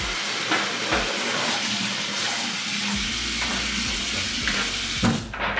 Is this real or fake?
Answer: real